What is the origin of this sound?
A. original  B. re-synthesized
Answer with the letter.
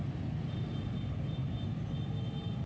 A